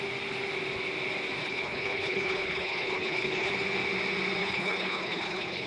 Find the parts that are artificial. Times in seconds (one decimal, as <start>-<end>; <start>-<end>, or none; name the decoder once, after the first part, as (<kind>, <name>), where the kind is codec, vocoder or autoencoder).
1.4-3.5 (codec, HILCodec); 4.4-5.7